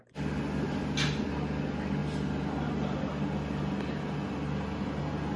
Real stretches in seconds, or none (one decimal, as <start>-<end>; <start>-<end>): 0.0-5.4